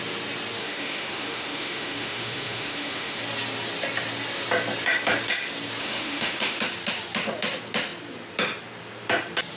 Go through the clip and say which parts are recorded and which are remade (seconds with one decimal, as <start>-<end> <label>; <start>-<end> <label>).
0.0-0.6 recorded; 0.6-3.2 remade; 3.2-5.8 recorded; 5.8-6.6 remade; 6.6-9.6 recorded